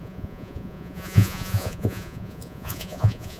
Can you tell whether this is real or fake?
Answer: fake